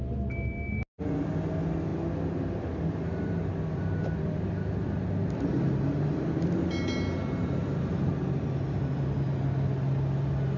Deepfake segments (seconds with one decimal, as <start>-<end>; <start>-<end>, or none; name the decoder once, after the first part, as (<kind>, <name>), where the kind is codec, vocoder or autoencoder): none